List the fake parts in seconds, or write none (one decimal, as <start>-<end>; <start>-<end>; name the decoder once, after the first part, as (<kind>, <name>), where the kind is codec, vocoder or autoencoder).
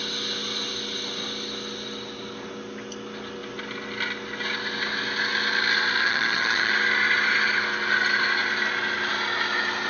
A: 6.0-6.7 (vocoder, HiFi-GAN)